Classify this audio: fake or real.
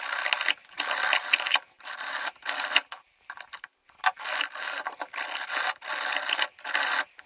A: real